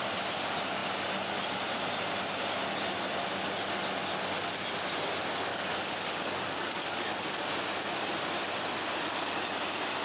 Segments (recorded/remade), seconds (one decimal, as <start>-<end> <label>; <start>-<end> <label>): 0.0-5.5 recorded; 5.5-7.4 remade; 7.4-10.0 recorded